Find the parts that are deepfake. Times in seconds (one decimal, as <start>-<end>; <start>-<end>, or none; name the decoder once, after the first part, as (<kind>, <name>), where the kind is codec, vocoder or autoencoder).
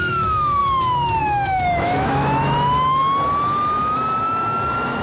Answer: 0.0-0.6 (autoencoder, DAC-VAE); 1.2-3.0; 4.2-5.0